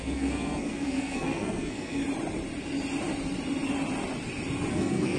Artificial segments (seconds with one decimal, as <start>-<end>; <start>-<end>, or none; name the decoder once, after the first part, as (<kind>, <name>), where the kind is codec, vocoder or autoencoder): 0.0-2.0 (codec, SNAC); 4.7-5.2